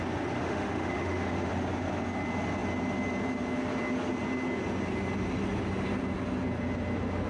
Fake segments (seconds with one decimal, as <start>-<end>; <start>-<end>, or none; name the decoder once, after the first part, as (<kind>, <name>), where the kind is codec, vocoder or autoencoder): 0.4-1.5 (autoencoder, DAC-VAE)